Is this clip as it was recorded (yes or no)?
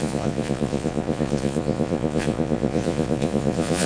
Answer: no